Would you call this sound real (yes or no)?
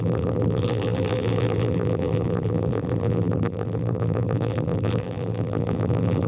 no